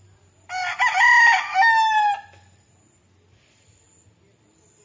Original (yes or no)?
yes